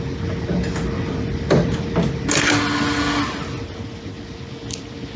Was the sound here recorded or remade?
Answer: recorded